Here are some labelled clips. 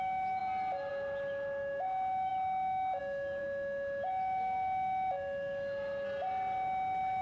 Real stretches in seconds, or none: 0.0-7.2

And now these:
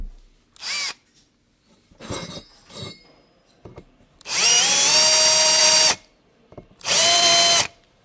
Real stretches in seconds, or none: 0.0-5.6; 7.3-8.0

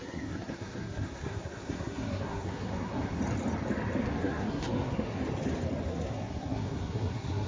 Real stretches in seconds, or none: 3.2-4.0; 5.2-5.9

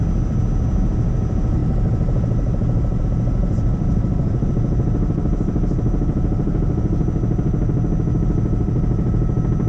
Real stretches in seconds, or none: 0.0-1.6; 3.0-3.4; 4.5-9.7

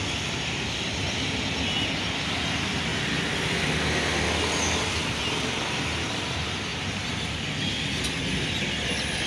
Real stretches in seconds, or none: 0.0-6.7; 7.3-9.3

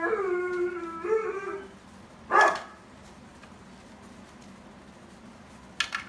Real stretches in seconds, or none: 0.0-6.1

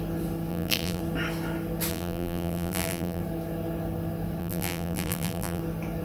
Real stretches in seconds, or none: 0.0-0.5; 1.0-1.9; 3.2-4.4; 5.6-6.0